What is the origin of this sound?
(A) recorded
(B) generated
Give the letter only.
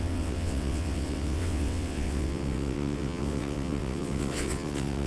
B